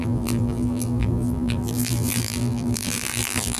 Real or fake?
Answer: fake